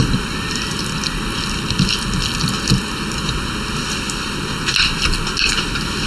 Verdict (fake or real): real